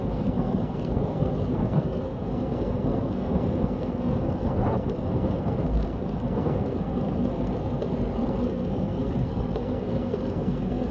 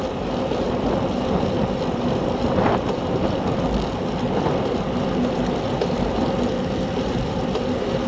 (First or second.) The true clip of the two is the second